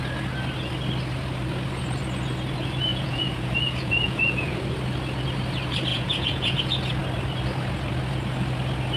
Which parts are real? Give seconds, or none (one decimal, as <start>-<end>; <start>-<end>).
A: 0.0-2.9; 4.6-5.9; 6.6-9.0